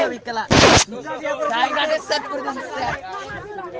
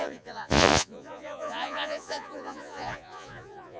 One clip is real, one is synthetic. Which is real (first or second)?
first